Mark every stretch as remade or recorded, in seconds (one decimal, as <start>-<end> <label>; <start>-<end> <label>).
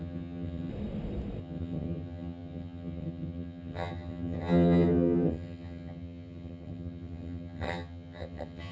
0.0-0.7 remade; 0.7-1.4 recorded; 1.4-8.7 remade